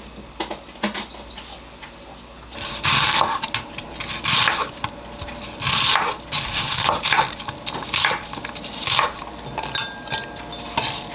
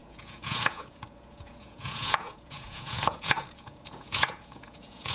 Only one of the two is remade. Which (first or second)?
second